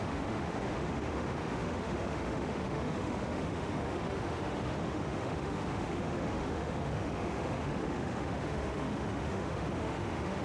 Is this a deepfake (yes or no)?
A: yes